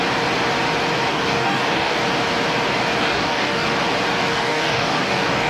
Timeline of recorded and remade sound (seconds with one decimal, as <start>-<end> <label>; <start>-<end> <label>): 0.0-1.1 recorded; 1.1-2.0 remade; 2.0-3.0 recorded; 3.0-3.7 remade; 3.7-4.2 recorded; 4.2-5.5 remade